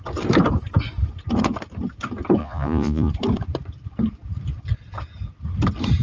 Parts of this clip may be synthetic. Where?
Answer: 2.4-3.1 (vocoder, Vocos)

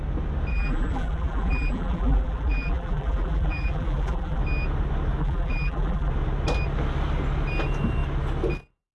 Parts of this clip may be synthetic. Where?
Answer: 0.5-4.4 (vocoder, BigVGAN v2); 5.2-6.1

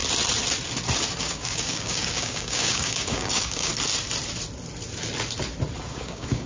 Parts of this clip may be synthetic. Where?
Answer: 1.2-3.7 (codec, DAC); 5.9-6.5

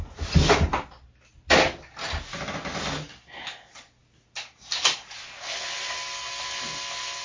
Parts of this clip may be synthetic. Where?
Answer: none

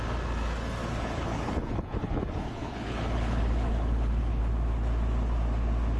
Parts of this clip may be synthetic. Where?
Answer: 0.8-4.4 (codec, HILCodec)

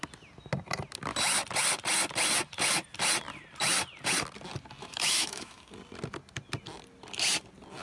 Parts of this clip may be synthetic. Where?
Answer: 4.8-5.7 (autoencoder, DAC-VAE)